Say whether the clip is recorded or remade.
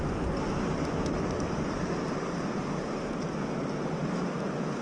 remade